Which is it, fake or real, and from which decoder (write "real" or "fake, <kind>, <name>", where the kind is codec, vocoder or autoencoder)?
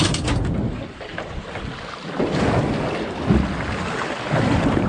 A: real